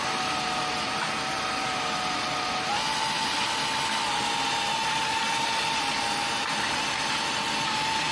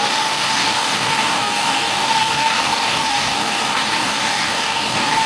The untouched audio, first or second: first